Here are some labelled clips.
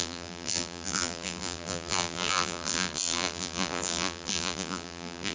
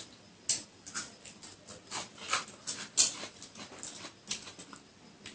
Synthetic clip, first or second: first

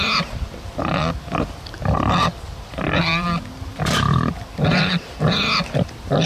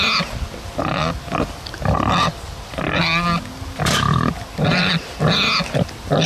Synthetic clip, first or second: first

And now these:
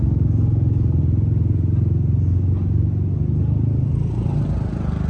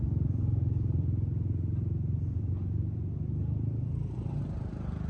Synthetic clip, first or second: second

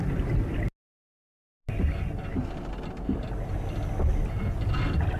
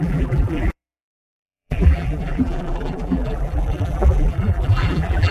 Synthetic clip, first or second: second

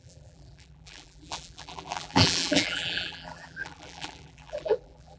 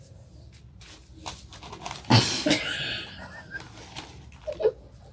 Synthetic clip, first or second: first